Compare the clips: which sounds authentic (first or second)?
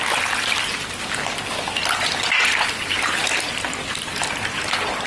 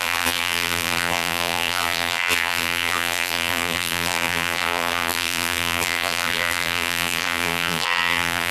first